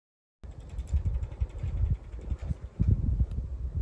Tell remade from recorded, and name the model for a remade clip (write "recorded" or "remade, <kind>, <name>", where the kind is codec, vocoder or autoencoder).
recorded